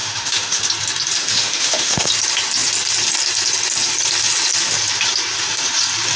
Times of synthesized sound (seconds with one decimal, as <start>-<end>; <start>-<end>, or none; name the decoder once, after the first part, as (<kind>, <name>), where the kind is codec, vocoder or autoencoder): 0.0-0.6 (autoencoder, DAC-VAE); 1.2-2.1